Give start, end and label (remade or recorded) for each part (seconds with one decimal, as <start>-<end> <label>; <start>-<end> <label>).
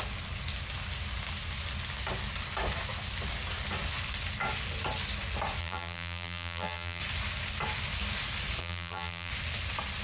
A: 0.0-5.6 recorded; 5.6-7.0 remade; 7.0-8.6 recorded; 8.6-9.3 remade; 9.3-10.0 recorded